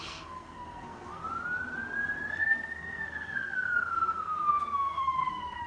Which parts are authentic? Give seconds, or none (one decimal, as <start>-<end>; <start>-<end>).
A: 1.2-2.3